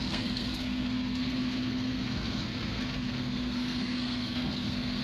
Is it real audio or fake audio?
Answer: fake